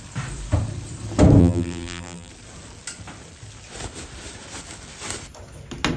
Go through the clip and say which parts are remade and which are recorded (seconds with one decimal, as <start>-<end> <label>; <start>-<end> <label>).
0.0-1.4 recorded; 1.4-2.3 remade; 2.3-6.0 recorded